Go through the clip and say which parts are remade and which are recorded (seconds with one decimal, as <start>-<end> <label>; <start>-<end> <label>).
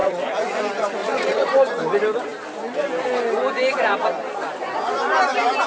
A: 0.0-0.6 remade; 0.6-1.0 recorded; 1.0-1.5 remade; 1.5-5.7 recorded